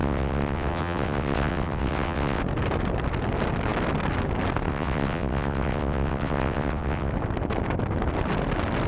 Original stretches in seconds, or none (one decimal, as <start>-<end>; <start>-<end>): 2.4-4.7; 7.1-8.9